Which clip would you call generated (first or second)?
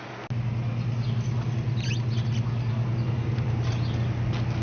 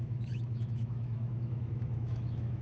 second